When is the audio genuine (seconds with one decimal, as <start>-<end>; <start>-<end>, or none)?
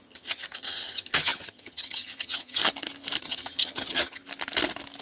2.6-3.2; 4.2-5.0